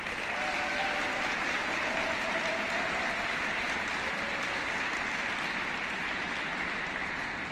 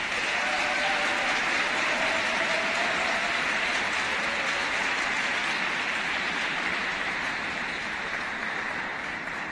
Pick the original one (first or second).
first